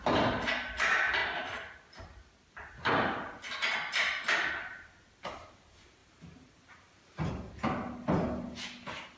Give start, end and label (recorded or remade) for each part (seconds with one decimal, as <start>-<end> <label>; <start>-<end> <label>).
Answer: 0.0-6.0 recorded; 6.0-7.3 remade; 7.3-9.2 recorded